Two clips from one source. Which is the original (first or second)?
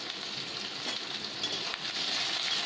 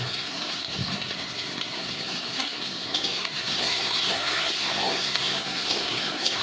first